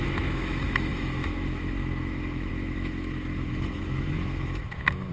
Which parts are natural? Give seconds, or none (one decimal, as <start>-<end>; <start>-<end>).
none

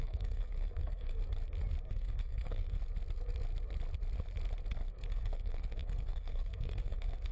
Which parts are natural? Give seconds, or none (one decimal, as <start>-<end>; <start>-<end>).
1.2-1.9; 2.8-5.1

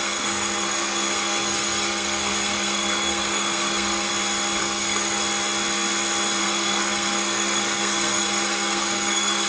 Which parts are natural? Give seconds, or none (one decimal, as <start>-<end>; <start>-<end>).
4.1-4.6; 5.2-6.4

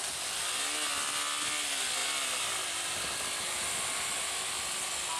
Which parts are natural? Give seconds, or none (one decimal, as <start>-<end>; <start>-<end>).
0.0-5.2

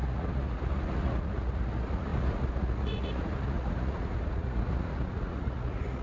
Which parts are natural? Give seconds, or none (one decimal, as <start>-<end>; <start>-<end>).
none

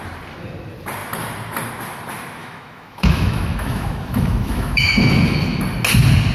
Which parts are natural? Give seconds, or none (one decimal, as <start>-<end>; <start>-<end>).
0.0-2.4; 5.6-6.3

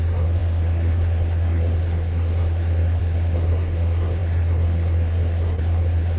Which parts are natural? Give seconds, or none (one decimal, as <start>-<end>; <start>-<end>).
none

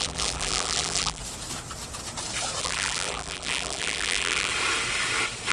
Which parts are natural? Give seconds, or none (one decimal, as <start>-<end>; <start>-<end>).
1.2-2.6; 4.5-5.5